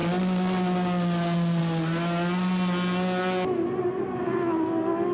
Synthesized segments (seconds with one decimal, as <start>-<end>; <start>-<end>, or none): none